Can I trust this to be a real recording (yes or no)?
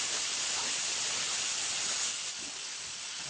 yes